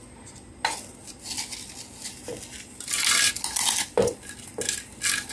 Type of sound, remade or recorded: recorded